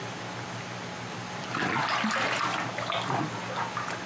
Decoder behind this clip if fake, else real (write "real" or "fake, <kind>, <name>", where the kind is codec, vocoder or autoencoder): real